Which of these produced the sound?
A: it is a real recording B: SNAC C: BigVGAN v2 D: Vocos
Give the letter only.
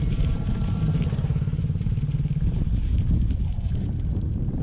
C